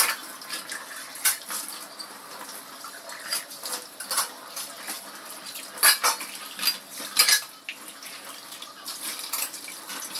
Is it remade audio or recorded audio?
recorded